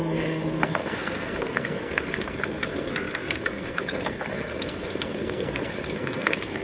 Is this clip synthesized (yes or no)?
yes